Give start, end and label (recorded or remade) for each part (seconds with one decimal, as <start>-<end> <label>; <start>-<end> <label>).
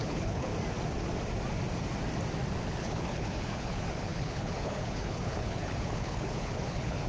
0.0-0.5 remade; 0.5-2.7 recorded; 2.7-7.1 remade